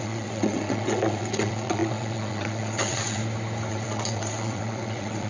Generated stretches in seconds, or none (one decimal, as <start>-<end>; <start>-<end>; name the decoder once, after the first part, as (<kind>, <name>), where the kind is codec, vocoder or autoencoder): 0.0-3.2 (vocoder, WaveNeXt); 3.7-5.3